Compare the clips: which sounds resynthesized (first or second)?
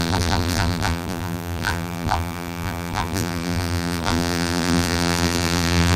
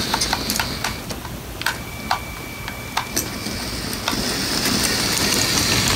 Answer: first